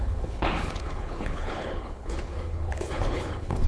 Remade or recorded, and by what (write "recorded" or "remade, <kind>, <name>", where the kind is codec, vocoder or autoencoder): remade, codec, HILCodec